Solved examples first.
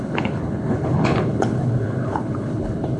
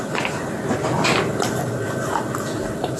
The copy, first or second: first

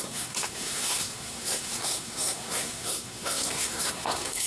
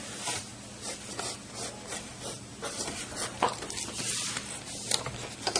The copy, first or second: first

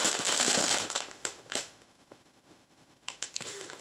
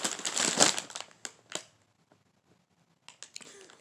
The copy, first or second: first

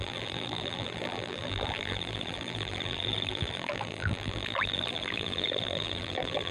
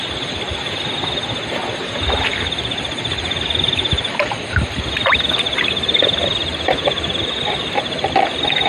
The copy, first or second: first